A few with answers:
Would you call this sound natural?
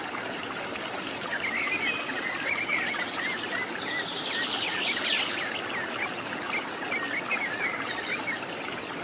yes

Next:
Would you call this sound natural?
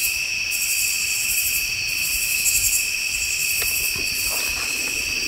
yes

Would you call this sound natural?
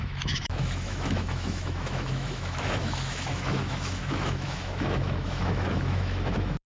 no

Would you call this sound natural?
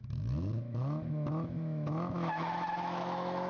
no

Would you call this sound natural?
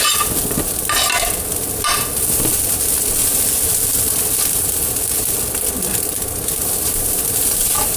yes